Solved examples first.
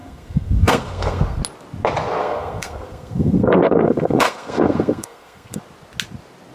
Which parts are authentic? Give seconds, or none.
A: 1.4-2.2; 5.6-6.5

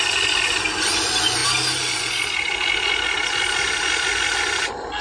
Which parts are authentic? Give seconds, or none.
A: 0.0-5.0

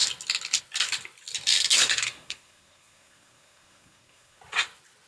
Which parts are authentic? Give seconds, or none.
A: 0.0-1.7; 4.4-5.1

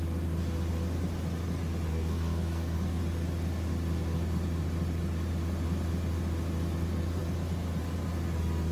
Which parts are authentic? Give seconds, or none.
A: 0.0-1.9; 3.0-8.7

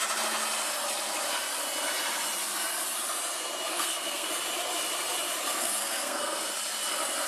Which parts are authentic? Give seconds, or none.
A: 0.0-3.7; 4.3-5.5; 6.5-7.3